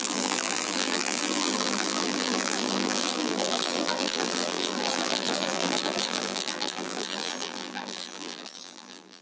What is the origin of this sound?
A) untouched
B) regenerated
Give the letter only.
B